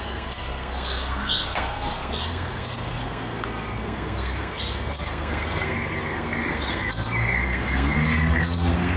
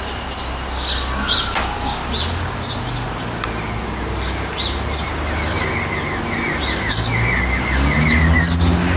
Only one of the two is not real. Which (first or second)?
first